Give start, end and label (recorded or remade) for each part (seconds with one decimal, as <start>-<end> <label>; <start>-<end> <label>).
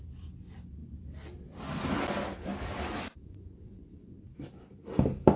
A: 0.0-3.2 recorded; 3.2-4.2 remade; 4.2-5.4 recorded